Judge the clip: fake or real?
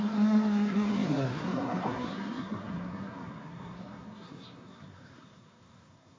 fake